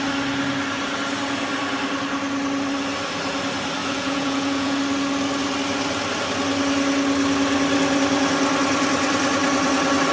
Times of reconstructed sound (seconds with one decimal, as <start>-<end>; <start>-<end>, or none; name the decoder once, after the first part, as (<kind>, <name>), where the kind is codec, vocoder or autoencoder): 3.8-4.8 (vocoder, Vocos)